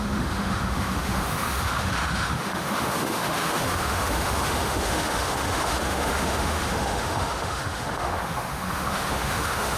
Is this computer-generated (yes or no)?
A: yes